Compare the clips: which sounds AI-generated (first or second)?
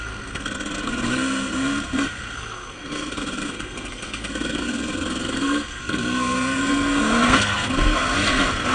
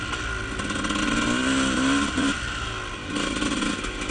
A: first